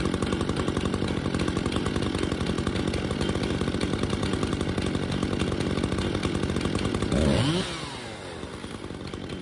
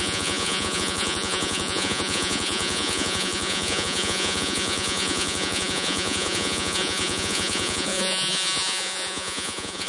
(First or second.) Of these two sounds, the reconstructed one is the second